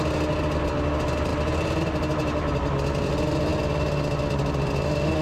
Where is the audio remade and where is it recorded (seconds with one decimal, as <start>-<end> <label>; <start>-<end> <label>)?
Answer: 0.0-5.2 recorded